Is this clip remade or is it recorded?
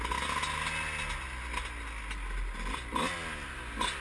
recorded